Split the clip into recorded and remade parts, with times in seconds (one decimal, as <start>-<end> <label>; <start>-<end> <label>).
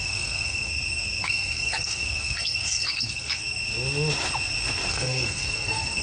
0.0-0.7 remade; 0.7-1.2 recorded; 1.2-3.4 remade; 3.4-4.9 recorded; 4.9-6.0 remade